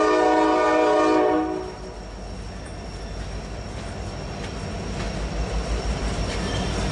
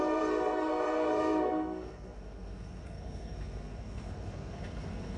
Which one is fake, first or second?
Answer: second